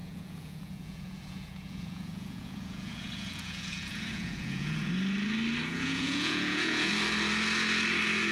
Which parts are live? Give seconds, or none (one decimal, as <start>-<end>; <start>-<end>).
4.9-5.7; 6.9-8.3